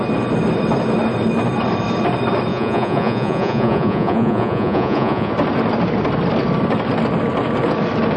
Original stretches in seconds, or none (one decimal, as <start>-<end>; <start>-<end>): 0.0-2.5; 5.3-8.2

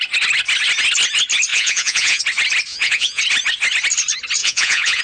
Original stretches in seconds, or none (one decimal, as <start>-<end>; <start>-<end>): 0.0-1.5; 2.2-2.7; 3.2-4.4

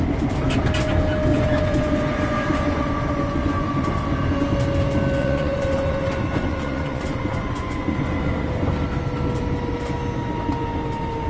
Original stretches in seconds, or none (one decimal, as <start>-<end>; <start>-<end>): 0.0-1.3; 3.9-5.2; 8.5-11.3

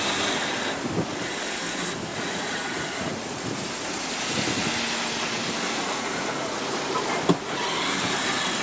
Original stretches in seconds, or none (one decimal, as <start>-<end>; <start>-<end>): 0.0-2.1; 3.1-5.7; 6.8-8.6

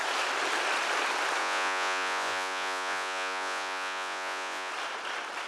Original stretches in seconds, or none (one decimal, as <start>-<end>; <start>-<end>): 0.0-1.4; 4.7-5.5

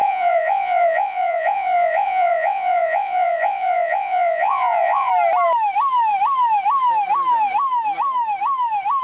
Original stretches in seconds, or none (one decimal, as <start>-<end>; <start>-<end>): 5.1-9.0